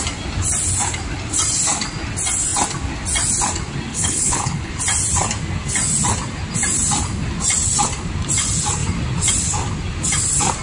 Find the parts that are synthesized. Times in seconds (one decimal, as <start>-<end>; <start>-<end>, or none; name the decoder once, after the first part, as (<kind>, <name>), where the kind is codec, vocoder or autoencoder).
3.9-4.7 (codec, HILCodec)